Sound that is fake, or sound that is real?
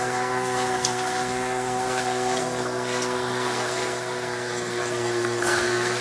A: fake